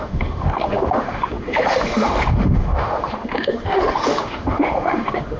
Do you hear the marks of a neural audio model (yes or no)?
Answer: yes